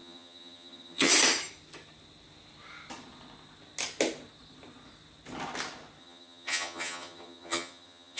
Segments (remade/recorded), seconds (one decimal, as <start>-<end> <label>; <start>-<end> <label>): 0.0-1.1 remade; 1.1-6.0 recorded; 6.0-8.2 remade